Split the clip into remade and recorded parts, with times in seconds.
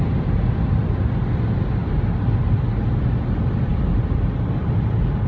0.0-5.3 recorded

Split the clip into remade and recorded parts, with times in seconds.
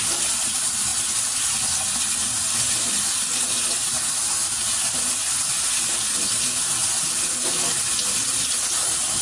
0.0-9.2 recorded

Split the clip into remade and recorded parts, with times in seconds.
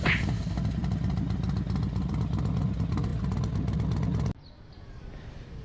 0.0-5.6 recorded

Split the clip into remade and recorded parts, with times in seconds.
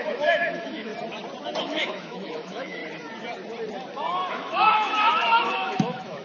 0.0-0.9 remade; 0.9-1.6 recorded; 1.6-2.8 remade; 2.8-4.3 recorded; 4.3-6.2 remade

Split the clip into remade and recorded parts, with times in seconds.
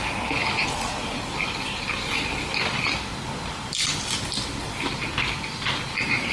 0.0-6.3 recorded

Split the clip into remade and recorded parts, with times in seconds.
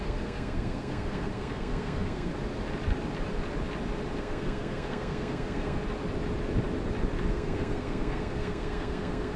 0.0-2.3 remade; 2.3-4.2 recorded; 4.2-5.8 remade; 5.8-7.3 recorded; 7.3-9.4 remade